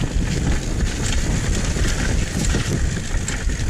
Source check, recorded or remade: recorded